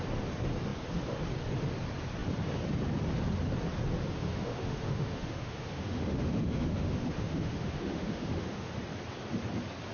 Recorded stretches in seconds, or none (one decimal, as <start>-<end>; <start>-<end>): 0.0-4.1; 8.7-9.9